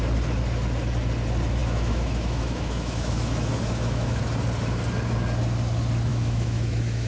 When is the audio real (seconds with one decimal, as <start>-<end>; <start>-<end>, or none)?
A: 0.0-1.6; 4.2-6.1